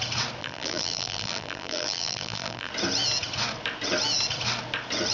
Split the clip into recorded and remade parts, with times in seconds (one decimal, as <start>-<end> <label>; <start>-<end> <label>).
0.0-0.4 recorded; 0.4-2.7 remade; 2.7-5.1 recorded